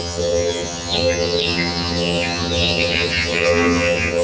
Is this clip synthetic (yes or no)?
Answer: yes